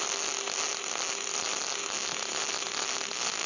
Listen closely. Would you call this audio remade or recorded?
recorded